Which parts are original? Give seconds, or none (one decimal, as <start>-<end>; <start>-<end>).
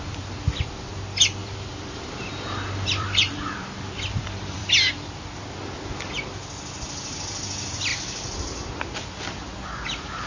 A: 0.0-1.4; 4.7-10.3